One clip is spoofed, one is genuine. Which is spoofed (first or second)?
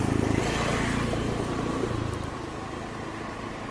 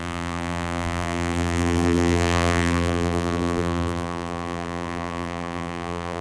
second